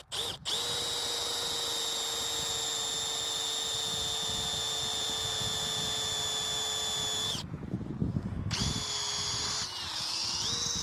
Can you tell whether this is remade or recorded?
recorded